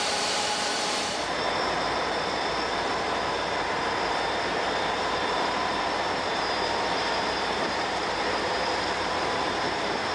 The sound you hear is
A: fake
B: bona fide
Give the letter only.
A